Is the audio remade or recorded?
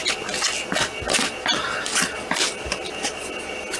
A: recorded